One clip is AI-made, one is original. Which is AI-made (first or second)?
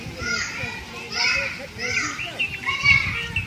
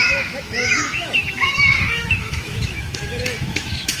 second